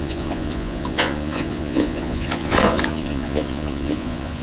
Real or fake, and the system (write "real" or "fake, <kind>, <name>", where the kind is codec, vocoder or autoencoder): fake, vocoder, Vocos